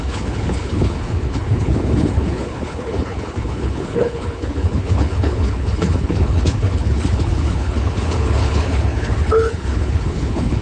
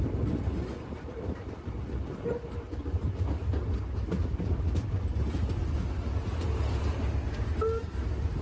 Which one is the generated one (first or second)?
first